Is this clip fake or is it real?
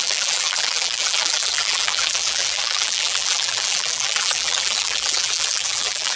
fake